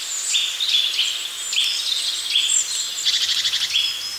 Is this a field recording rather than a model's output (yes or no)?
yes